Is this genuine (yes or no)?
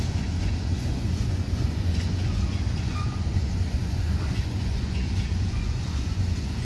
no